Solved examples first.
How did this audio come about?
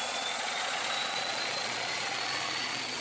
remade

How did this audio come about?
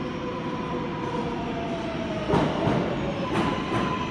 recorded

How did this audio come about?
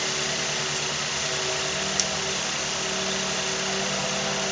recorded